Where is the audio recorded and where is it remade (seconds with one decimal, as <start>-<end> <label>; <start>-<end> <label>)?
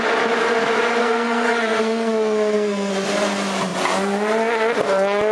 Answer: 0.0-1.0 recorded; 1.0-2.9 remade; 2.9-5.3 recorded